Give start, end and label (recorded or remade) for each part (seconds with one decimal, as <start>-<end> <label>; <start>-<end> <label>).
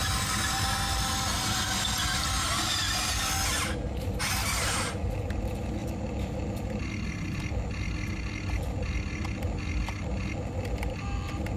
0.0-11.6 recorded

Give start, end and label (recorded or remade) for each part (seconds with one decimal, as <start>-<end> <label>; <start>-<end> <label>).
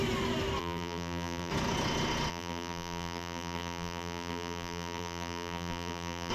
0.0-0.6 recorded; 0.6-1.5 remade; 1.5-2.3 recorded; 2.3-6.3 remade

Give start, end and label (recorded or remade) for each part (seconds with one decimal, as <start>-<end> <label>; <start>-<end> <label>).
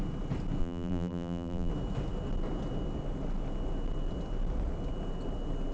0.0-0.6 recorded; 0.6-1.7 remade; 1.7-5.7 recorded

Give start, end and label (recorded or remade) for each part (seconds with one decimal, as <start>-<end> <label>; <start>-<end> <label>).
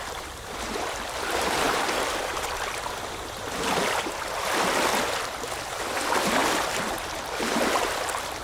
0.0-4.9 remade; 4.9-5.8 recorded; 5.8-6.4 remade; 6.4-8.4 recorded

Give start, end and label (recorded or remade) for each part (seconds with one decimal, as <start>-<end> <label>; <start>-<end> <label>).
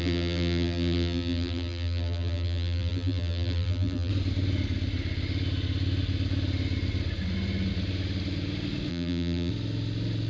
0.0-4.1 remade; 4.1-8.9 recorded; 8.9-9.5 remade; 9.5-10.3 recorded